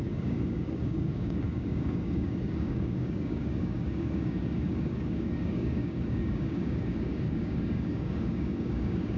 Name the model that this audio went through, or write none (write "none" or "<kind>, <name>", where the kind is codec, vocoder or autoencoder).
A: codec, DAC